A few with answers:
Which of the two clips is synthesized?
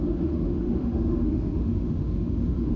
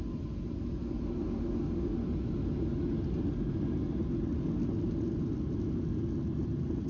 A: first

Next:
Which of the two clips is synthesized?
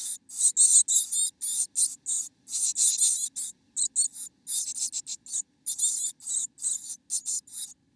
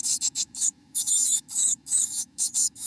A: second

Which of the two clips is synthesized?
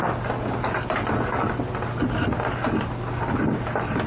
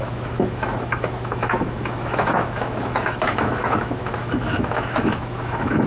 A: second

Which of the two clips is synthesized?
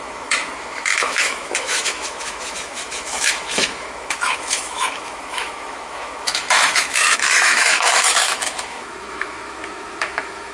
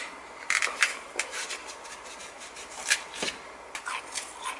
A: first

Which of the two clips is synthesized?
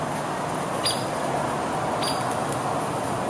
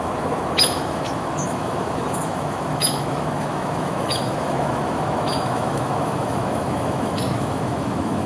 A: second